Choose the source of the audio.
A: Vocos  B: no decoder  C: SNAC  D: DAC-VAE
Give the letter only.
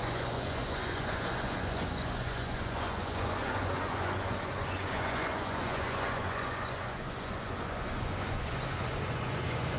A